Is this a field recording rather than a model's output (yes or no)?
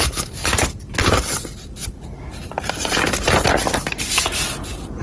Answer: no